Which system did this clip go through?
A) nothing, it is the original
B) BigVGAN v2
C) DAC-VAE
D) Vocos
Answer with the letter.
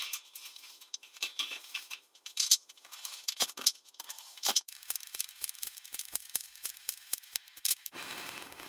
C